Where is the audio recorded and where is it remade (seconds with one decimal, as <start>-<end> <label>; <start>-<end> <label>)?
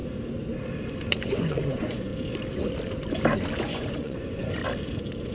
0.0-1.2 recorded; 1.2-2.1 remade; 2.1-3.6 recorded; 3.6-4.6 remade; 4.6-5.3 recorded